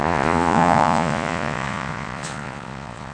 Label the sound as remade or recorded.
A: remade